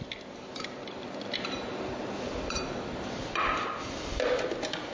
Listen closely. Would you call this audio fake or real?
real